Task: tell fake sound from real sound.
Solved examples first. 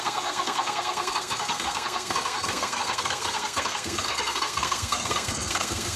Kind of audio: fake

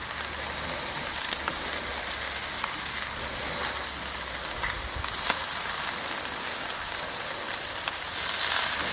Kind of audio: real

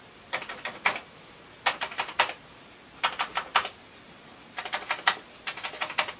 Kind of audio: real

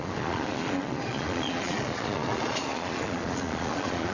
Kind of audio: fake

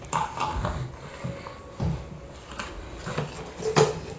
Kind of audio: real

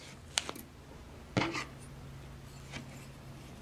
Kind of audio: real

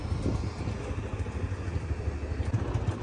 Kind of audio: real